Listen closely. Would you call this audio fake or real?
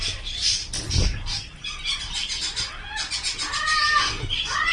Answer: real